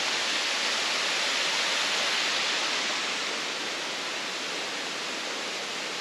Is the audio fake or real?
real